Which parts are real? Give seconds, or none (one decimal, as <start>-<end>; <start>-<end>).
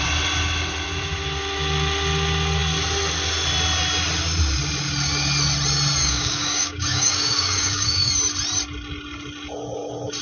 0.0-6.0; 8.1-10.2